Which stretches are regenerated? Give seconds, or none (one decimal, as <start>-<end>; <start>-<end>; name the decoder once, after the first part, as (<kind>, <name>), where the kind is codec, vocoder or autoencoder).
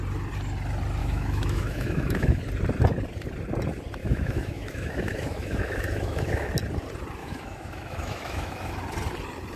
1.0-2.4 (autoencoder, DAC-VAE); 4.0-6.5; 7.2-8.8